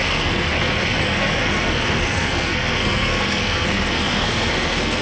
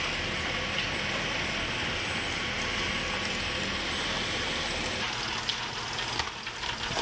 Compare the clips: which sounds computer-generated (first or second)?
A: first